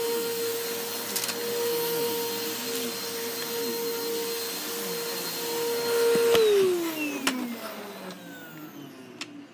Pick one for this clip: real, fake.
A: real